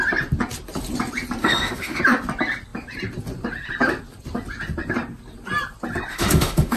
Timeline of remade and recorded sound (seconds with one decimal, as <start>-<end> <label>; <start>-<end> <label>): 0.0-1.4 recorded; 1.4-2.0 remade; 2.0-6.1 recorded; 6.1-6.8 remade